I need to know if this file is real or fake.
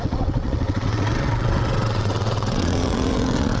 fake